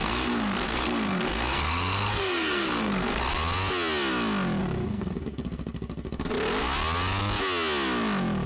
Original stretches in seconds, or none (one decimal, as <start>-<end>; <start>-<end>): 3.3-4.6; 6.3-8.5